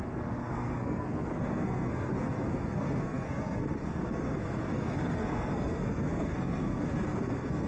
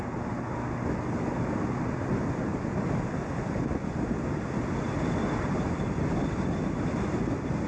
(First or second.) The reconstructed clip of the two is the first